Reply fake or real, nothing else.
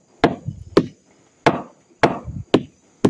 real